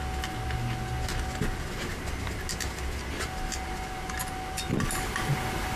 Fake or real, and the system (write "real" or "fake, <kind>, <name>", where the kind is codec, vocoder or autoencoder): real